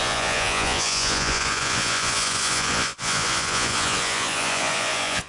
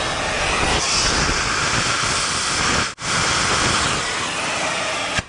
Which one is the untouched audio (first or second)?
second